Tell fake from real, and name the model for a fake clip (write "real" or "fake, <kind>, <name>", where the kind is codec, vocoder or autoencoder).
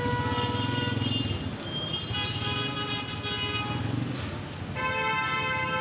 real